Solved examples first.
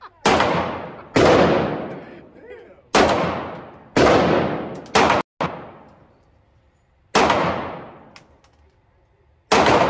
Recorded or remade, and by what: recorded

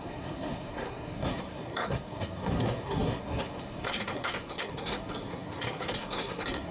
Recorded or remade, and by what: remade, codec, SNAC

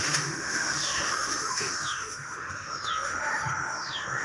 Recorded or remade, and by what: remade, autoencoder, DAC-VAE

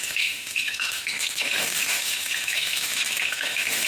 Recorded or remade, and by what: remade, autoencoder, DAC-VAE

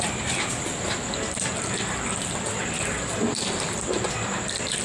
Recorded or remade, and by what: remade, vocoder, BigVGAN v2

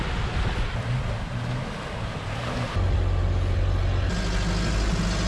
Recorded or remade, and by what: recorded